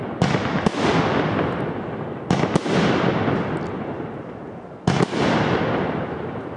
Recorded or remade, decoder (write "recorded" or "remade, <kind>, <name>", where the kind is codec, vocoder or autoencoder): recorded